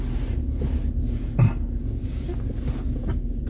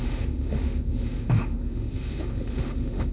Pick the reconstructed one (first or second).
second